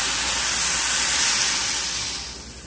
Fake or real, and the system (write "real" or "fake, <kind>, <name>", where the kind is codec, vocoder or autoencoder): real